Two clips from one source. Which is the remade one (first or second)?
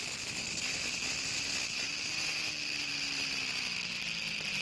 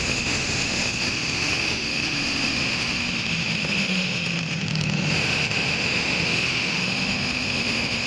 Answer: second